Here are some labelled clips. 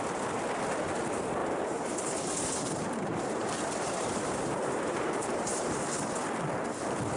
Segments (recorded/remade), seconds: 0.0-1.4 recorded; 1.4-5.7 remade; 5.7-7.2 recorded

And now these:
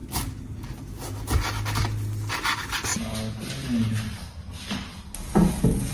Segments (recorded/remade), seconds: 0.0-5.9 recorded

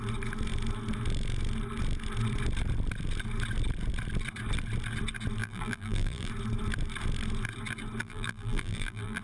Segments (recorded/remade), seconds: 0.0-5.4 recorded; 5.4-6.3 remade; 6.3-8.0 recorded; 8.0-9.2 remade

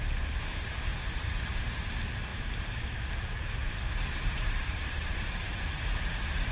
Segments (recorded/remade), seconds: 0.0-2.3 recorded; 2.3-6.5 remade